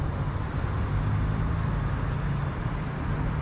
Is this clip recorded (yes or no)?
yes